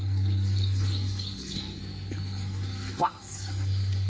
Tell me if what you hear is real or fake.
fake